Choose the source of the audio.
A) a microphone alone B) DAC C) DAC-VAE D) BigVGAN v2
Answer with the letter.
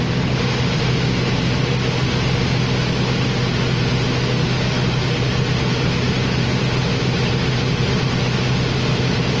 A